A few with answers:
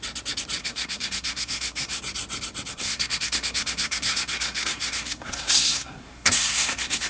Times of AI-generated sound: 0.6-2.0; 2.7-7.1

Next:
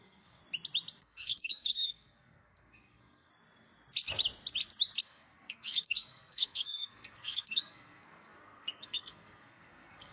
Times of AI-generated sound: 0.0-0.4; 1.0-3.3; 5.0-10.1

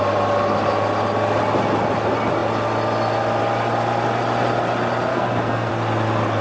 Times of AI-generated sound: 5.1-5.7